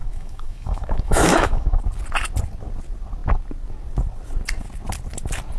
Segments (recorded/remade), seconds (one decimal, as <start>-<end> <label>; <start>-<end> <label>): 0.0-1.8 remade; 1.8-5.6 recorded